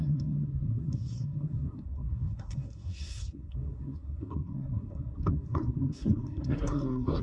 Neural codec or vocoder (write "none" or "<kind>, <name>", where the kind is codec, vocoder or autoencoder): codec, SNAC